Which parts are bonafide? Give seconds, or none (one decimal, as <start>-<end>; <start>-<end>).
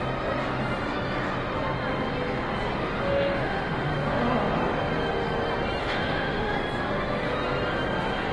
0.0-3.0; 3.9-5.8; 6.5-8.3